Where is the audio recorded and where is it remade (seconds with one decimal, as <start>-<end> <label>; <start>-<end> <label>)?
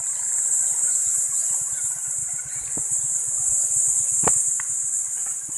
0.0-1.0 remade; 1.0-1.5 recorded; 1.5-2.2 remade; 2.2-5.6 recorded